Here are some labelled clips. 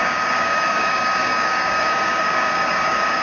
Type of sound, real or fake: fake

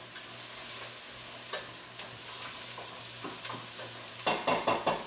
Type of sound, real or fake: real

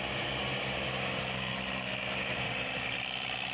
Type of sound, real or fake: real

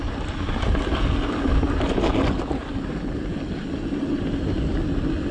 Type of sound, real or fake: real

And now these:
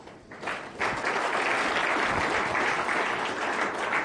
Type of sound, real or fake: real